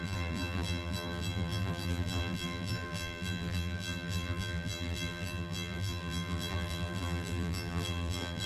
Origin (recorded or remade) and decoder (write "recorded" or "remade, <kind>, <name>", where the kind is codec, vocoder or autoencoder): remade, vocoder, BigVGAN v2